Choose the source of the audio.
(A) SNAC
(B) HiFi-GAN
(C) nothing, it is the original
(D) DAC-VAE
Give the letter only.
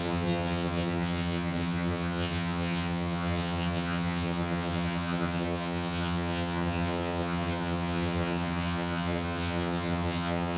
B